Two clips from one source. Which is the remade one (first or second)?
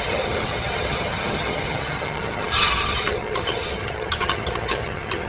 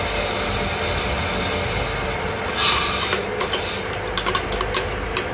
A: first